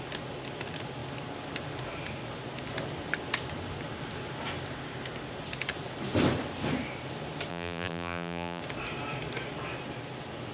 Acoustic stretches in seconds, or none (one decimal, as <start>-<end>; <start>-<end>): 0.0-7.5; 8.6-10.5

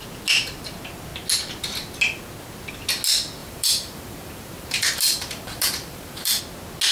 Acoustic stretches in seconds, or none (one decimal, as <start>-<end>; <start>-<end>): 0.0-3.4; 6.4-6.9

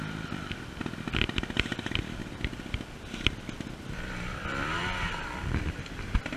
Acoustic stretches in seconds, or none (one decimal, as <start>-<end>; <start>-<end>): 0.8-1.7; 2.2-6.0

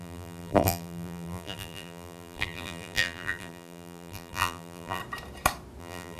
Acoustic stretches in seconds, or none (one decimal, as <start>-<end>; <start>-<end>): 5.0-5.8

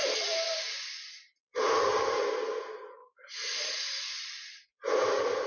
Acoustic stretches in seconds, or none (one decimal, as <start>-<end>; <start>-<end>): 2.2-3.0